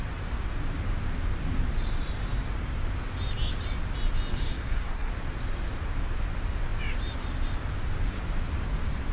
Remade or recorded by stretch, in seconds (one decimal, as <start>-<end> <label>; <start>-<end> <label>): 0.0-4.3 recorded; 4.3-5.1 remade; 5.1-9.1 recorded